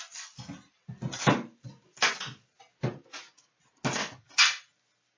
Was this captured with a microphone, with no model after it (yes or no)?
yes